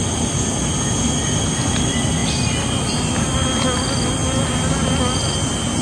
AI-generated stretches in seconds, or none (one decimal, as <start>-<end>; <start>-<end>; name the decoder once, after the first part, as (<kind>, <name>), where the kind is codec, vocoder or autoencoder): none